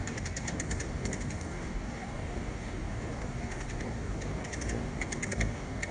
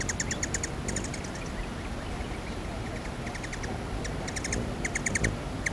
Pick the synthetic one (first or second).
first